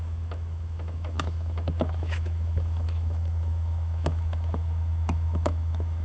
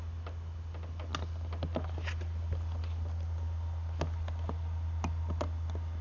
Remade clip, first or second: first